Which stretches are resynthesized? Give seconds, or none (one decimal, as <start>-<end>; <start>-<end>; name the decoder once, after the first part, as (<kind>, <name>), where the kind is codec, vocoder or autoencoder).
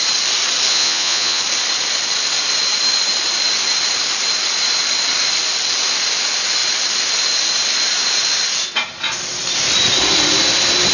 0.7-1.4 (vocoder, Vocos)